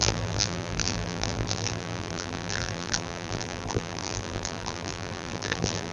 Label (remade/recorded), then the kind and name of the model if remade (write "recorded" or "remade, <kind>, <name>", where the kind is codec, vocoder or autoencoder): remade, vocoder, BigVGAN v2